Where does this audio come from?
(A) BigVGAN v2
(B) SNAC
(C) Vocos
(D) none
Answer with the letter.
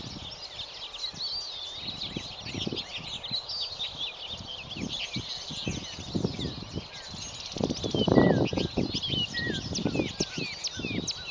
D